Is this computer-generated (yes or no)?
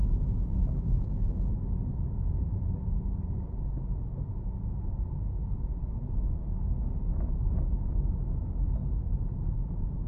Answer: no